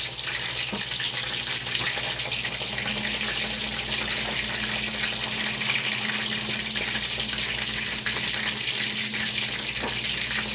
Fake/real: real